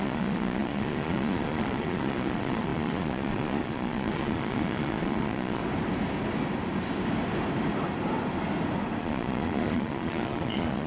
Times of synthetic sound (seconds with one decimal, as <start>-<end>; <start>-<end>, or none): 0.0-5.6; 9.0-10.9